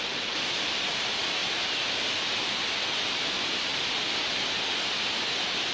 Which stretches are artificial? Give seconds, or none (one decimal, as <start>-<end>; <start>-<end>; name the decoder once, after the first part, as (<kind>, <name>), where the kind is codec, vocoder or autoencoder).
none